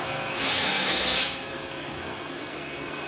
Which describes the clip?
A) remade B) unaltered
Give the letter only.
A